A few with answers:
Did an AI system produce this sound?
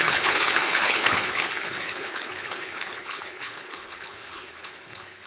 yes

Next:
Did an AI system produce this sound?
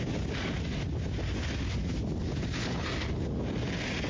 no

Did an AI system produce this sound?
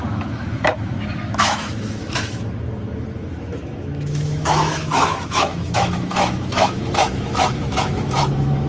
yes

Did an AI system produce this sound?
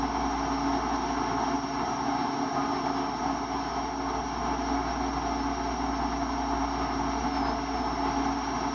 no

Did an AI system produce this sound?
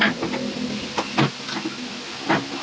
no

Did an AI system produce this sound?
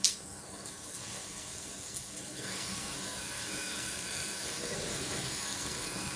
yes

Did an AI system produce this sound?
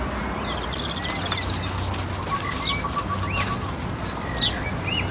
no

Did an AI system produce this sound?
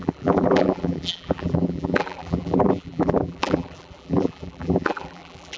yes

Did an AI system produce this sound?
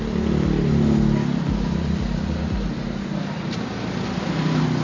no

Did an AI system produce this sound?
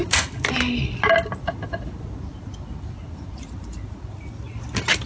no